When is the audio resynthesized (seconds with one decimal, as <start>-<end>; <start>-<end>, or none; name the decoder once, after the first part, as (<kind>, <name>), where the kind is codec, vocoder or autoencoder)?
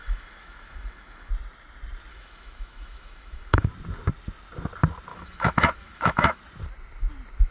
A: 0.0-1.3 (autoencoder, DAC-VAE); 2.1-3.6; 5.1-6.4